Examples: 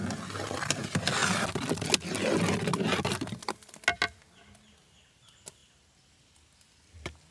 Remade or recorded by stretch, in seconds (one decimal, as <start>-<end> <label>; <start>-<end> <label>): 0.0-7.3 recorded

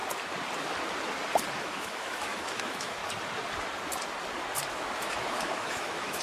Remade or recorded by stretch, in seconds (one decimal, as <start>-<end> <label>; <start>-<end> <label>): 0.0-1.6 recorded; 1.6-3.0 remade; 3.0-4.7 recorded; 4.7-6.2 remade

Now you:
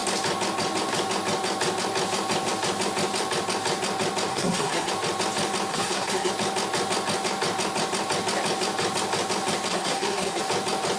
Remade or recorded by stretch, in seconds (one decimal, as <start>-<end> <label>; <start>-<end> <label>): 0.0-4.3 recorded; 4.3-4.9 remade; 4.9-5.7 recorded; 5.7-6.3 remade; 6.3-9.7 recorded; 9.7-10.4 remade; 10.4-11.0 recorded

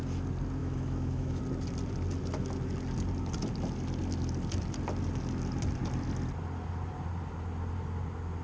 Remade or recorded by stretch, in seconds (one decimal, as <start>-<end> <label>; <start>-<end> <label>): 0.0-0.6 recorded; 0.6-1.4 remade; 1.4-8.4 recorded